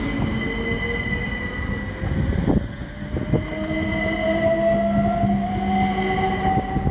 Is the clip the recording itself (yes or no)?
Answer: yes